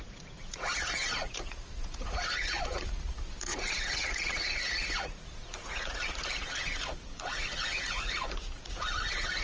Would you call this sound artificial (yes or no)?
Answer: yes